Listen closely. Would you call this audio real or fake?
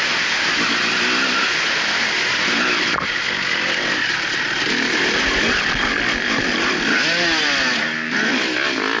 real